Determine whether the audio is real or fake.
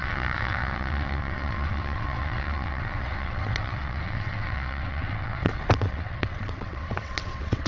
fake